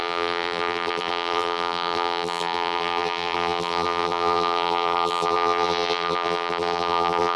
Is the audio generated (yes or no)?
yes